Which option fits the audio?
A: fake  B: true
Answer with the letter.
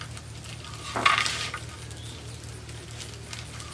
B